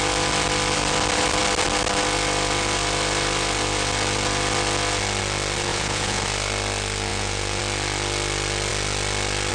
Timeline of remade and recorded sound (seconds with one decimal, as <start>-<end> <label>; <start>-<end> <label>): 0.0-5.7 recorded; 5.7-6.2 remade; 6.2-7.1 recorded; 7.1-7.6 remade; 7.6-9.5 recorded